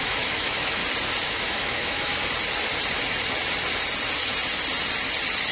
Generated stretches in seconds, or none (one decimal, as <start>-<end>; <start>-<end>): 0.0-0.8; 1.3-2.1